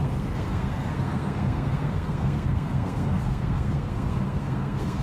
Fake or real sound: fake